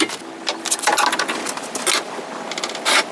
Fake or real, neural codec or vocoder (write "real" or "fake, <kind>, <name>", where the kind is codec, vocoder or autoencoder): real